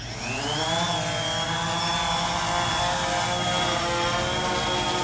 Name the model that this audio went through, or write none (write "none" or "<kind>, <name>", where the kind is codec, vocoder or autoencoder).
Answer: none